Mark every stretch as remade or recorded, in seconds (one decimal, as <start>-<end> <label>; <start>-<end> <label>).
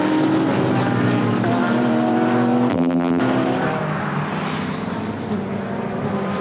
0.0-2.7 recorded; 2.7-3.2 remade; 3.2-6.4 recorded